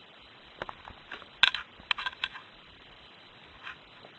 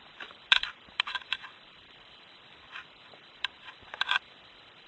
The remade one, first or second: second